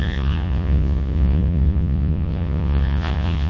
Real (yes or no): no